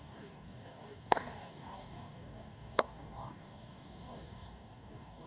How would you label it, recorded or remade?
remade